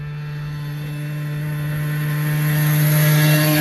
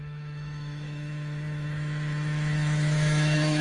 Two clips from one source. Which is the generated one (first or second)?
second